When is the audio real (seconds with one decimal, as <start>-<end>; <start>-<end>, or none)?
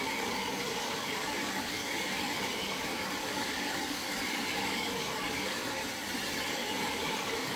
5.8-6.5